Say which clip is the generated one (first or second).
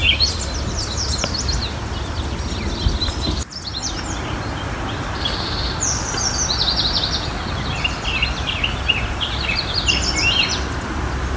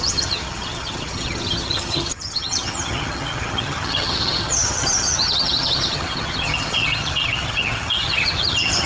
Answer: second